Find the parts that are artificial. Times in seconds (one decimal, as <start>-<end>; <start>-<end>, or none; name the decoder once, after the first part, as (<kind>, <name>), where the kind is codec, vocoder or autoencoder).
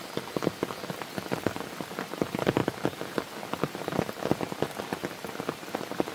none